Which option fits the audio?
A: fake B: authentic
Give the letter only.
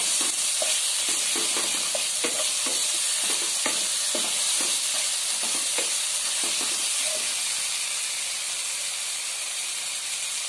B